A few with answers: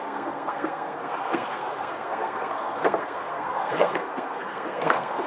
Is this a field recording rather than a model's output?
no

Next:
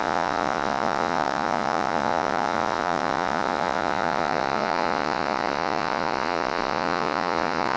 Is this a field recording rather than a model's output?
no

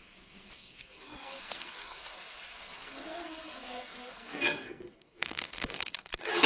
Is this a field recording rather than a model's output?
no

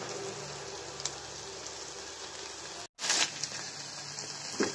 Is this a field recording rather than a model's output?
yes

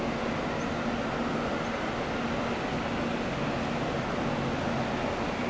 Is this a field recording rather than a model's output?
yes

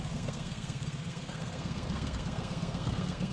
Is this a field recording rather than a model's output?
no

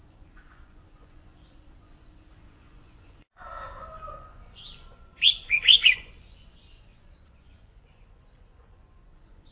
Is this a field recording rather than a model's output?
no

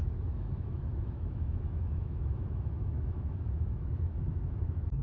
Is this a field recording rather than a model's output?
no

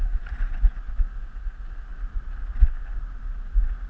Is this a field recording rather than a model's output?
yes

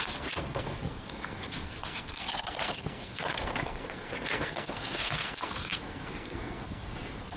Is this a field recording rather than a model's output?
no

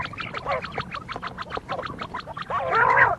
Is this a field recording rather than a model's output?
yes